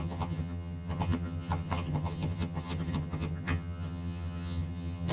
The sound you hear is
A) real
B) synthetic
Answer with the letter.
B